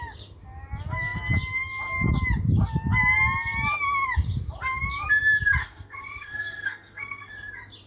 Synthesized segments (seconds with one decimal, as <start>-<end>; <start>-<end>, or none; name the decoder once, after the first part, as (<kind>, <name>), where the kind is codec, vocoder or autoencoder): 5.6-7.3 (codec, SNAC)

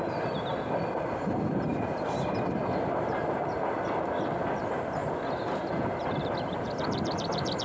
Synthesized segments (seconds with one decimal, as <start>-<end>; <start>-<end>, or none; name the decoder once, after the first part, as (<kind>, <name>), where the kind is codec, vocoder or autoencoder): none